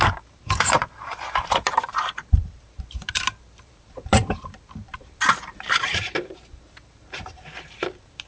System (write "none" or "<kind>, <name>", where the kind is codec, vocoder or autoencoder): vocoder, BigVGAN v2